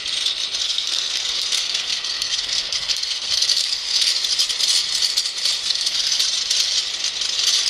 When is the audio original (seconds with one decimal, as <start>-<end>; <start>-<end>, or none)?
0.0-0.6; 4.1-5.6; 6.2-7.7